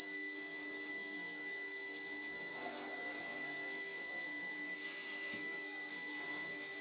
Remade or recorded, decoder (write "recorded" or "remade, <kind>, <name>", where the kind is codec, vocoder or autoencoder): remade, codec, SNAC